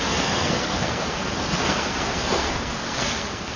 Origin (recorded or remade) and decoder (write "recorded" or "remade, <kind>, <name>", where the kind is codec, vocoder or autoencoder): remade, codec, SNAC